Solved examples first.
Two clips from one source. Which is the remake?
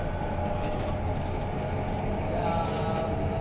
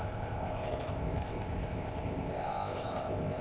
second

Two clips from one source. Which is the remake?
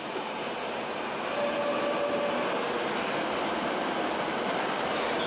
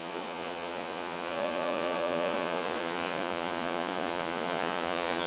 second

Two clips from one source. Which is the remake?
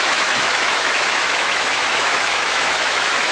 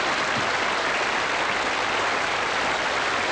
first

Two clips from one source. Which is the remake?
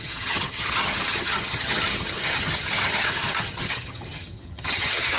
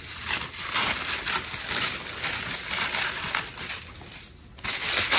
first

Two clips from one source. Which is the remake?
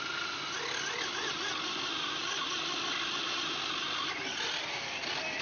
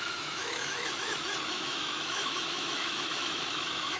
second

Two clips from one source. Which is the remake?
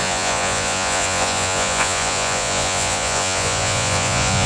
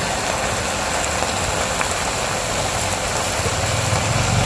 first